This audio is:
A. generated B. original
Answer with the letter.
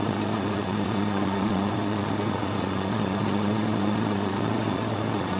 A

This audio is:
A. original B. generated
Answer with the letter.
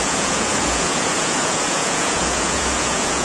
B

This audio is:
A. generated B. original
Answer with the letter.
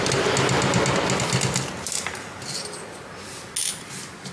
B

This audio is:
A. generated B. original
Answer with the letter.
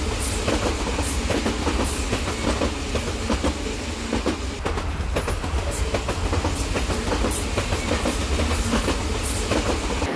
B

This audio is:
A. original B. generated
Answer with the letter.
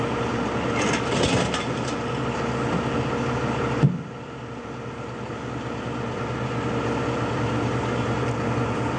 A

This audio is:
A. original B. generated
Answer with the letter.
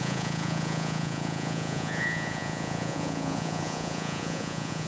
B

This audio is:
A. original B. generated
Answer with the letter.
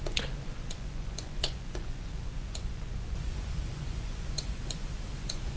B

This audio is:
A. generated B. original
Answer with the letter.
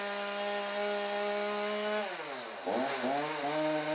B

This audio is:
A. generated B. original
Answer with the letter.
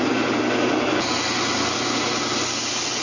B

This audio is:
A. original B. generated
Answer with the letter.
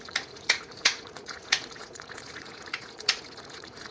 B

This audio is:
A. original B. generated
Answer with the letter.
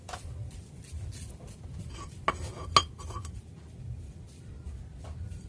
A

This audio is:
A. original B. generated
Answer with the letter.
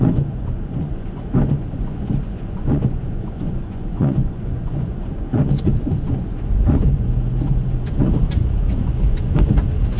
B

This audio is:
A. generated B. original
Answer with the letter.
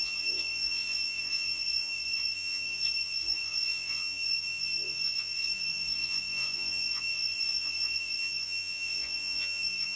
A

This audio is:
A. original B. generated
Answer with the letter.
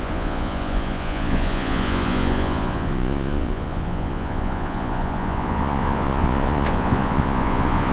B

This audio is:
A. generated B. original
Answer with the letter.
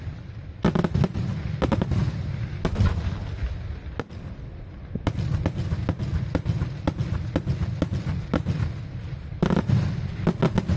B